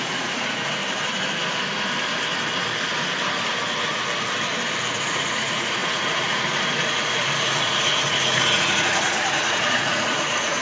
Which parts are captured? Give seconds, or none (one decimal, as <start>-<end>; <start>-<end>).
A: 0.8-4.9